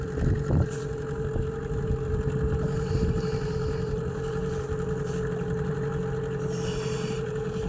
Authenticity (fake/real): real